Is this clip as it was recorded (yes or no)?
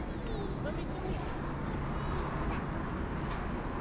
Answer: yes